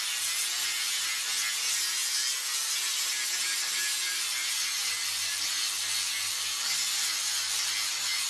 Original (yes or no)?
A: yes